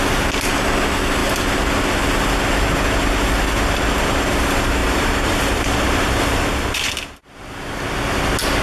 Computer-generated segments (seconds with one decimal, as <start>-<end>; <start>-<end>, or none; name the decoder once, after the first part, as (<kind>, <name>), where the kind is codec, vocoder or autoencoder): 4.8-6.9 (vocoder, BigVGAN v2)